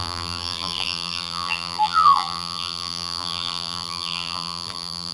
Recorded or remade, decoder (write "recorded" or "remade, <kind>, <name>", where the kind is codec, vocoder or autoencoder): remade, vocoder, BigVGAN v2